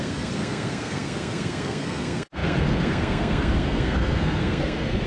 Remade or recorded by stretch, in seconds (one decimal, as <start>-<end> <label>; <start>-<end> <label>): 0.0-5.1 remade